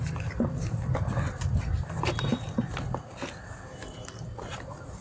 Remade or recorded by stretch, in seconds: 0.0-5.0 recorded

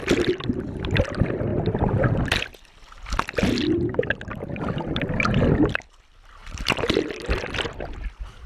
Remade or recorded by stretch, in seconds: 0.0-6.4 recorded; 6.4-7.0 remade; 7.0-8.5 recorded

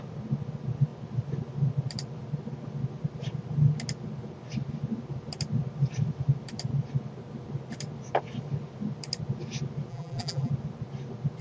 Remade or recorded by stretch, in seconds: 0.0-9.9 recorded; 9.9-10.5 remade; 10.5-11.4 recorded